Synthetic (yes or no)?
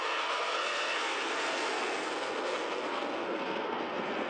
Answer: yes